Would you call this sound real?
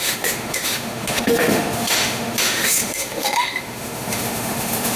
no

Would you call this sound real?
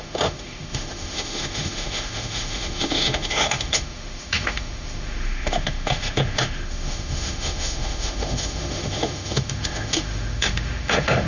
no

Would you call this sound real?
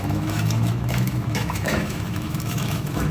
no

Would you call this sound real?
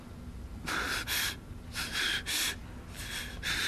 yes